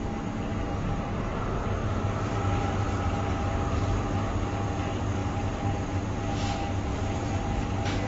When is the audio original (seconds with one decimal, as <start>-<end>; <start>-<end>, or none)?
0.0-5.2; 6.2-6.9; 7.6-8.1